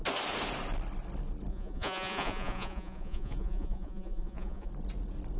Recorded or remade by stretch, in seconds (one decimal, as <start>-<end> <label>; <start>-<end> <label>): 0.0-1.5 recorded; 1.5-4.7 remade; 4.7-5.4 recorded